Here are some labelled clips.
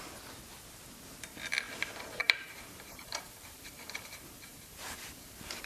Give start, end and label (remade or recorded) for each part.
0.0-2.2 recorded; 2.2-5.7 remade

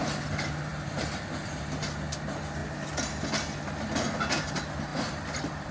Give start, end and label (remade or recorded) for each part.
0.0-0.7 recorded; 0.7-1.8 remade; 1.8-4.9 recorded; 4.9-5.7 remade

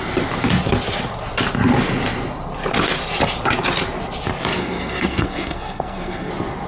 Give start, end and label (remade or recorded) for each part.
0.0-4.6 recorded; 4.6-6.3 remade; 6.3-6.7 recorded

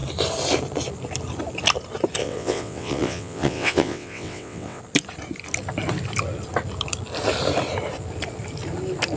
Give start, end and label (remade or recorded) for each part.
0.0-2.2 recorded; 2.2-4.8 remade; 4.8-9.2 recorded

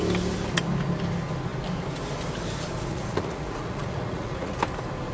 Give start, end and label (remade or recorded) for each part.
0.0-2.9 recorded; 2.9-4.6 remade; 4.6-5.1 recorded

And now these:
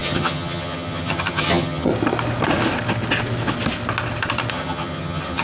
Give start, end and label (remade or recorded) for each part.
0.0-1.9 remade; 1.9-4.5 recorded; 4.5-5.4 remade

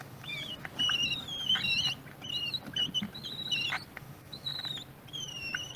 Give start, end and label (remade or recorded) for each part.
0.0-0.5 remade; 0.5-4.0 recorded; 4.0-4.5 remade; 4.5-5.8 recorded

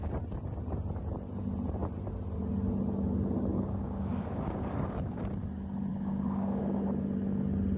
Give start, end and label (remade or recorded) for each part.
0.0-3.5 recorded; 3.5-5.2 remade; 5.2-5.9 recorded; 5.9-6.6 remade; 6.6-7.8 recorded